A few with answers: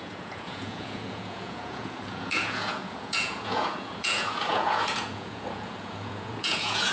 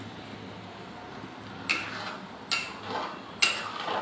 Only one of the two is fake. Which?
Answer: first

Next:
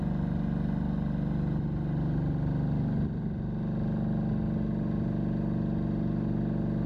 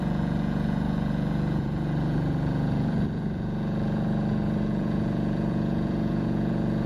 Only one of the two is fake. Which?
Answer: second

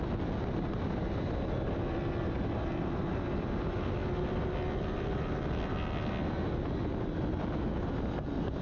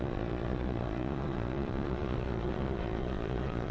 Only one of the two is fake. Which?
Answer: second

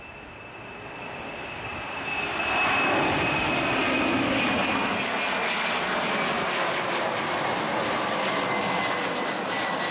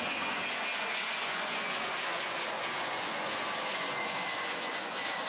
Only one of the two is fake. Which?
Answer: second